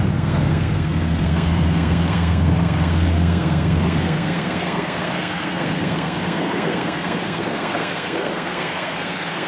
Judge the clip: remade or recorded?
remade